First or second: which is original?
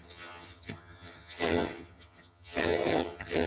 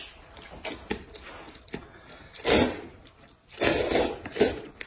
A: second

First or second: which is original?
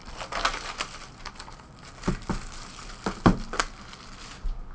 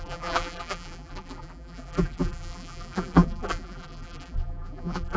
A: first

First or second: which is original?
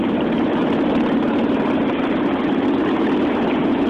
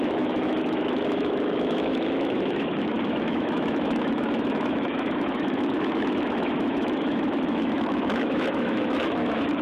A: first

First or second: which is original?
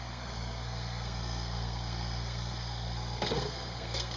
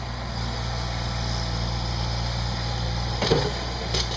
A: second